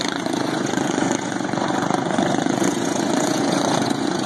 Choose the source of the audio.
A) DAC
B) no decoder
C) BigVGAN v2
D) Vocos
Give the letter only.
D